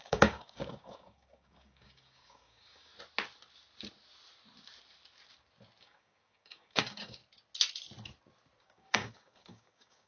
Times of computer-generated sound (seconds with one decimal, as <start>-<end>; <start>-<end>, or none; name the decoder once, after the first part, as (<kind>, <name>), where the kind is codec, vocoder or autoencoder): 0.0-2.9 (codec, DAC); 5.8-7.2; 8.6-10.1